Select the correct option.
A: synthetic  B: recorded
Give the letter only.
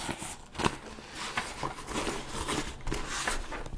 B